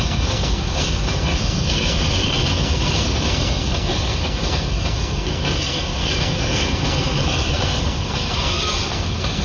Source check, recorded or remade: remade